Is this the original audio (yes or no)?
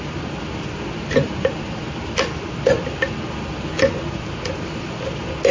yes